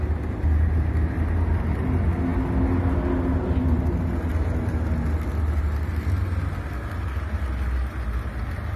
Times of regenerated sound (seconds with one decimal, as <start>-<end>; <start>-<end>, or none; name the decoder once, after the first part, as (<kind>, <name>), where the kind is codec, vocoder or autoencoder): none